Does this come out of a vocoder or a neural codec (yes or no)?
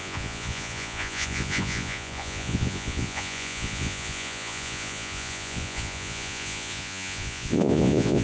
yes